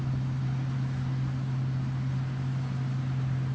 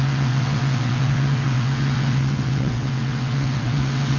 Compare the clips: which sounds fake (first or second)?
second